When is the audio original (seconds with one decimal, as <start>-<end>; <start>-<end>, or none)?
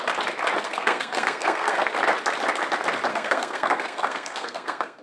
0.0-0.6; 1.8-3.1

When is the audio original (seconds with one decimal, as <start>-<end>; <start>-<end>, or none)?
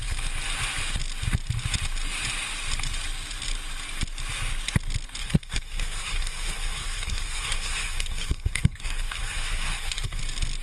0.0-5.2; 10.2-10.6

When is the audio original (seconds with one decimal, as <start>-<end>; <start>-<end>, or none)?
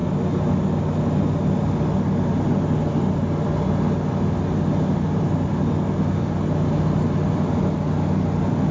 0.0-8.7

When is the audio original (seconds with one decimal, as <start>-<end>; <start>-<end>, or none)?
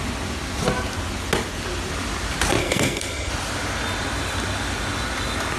0.0-2.6; 3.3-5.6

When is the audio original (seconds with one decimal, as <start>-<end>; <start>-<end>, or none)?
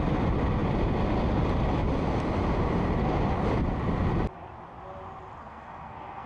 0.0-5.4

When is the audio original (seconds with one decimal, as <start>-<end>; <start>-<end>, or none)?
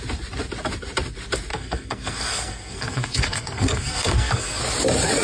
0.0-1.5; 4.6-5.2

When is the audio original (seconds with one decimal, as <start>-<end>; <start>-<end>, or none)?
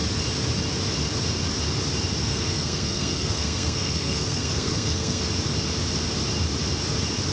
0.0-2.2; 5.2-7.3